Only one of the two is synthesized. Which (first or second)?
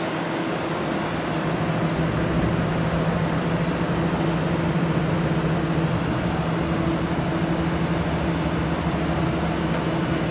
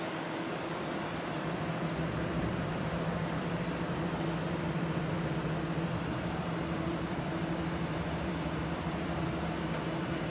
second